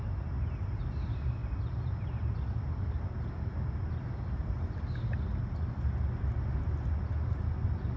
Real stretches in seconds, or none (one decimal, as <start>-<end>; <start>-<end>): 0.0-8.0